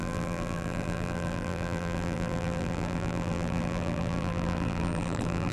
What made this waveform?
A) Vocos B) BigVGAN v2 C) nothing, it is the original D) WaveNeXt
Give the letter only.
B